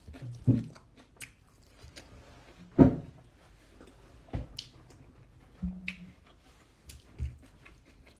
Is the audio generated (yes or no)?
no